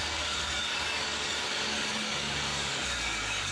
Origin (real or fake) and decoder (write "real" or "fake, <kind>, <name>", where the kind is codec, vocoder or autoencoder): fake, codec, DAC